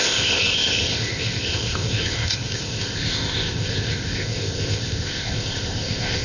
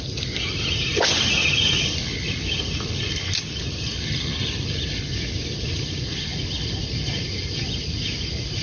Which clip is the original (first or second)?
second